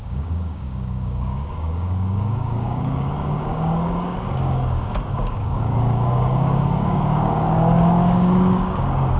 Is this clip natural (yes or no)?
no